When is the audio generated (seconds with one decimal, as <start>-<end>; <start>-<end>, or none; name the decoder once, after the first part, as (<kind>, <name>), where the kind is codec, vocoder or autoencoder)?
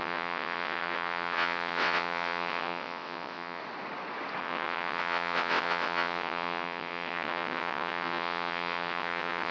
0.0-3.6 (vocoder, WaveNeXt); 4.4-9.5